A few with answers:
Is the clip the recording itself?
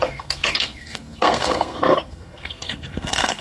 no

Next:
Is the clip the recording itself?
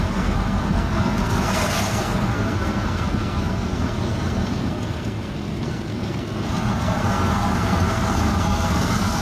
no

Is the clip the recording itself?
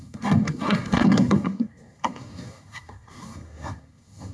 no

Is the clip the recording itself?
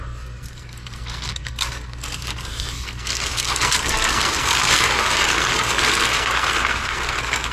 no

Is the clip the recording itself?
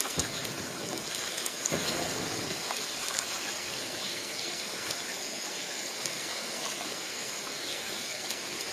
no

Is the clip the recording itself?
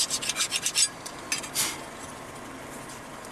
yes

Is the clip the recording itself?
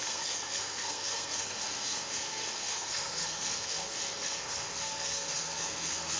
no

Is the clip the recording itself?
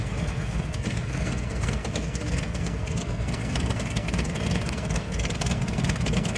no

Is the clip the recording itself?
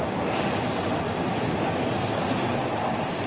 yes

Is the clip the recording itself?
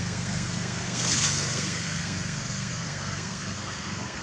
no